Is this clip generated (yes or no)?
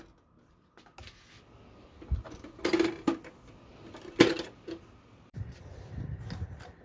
no